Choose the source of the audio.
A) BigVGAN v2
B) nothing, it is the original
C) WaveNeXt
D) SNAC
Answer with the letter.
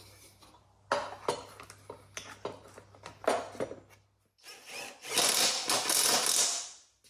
B